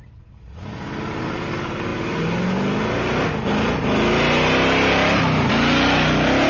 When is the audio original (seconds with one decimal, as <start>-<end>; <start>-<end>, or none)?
0.0-6.5